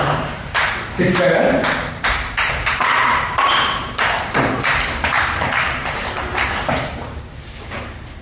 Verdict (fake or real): fake